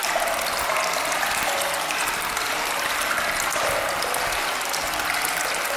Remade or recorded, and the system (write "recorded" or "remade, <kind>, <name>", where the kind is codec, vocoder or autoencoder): recorded